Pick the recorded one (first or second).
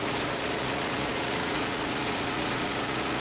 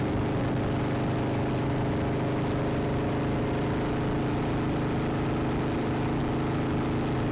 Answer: second